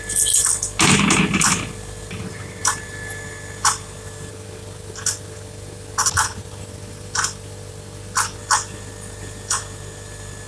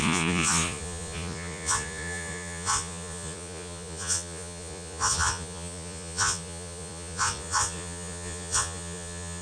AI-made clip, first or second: second